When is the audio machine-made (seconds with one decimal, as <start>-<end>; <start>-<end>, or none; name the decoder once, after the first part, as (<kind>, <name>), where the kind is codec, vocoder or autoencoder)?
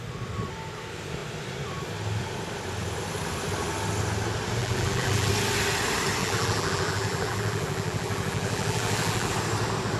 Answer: 4.6-5.3 (vocoder, BigVGAN v2); 6.2-9.3